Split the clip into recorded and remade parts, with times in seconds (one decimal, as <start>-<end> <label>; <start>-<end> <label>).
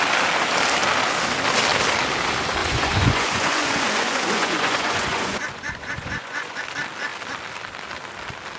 0.0-2.6 recorded; 2.6-6.6 remade; 6.6-8.6 recorded